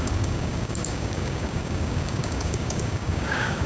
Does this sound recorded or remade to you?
remade